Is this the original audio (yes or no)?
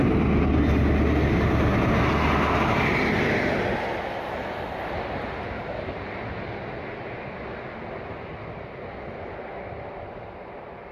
yes